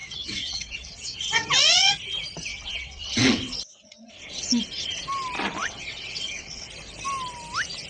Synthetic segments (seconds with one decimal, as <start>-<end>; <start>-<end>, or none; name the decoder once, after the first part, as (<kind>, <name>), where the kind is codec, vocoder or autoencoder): 0.0-1.9 (vocoder, WaveNeXt); 2.5-5.0; 5.6-6.7